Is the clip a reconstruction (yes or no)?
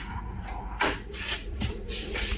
yes